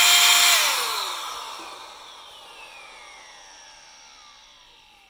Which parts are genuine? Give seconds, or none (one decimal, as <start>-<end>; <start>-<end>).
none

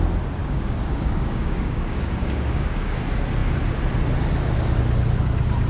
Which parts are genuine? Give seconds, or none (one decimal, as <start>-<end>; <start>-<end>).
0.0-0.4; 3.0-5.7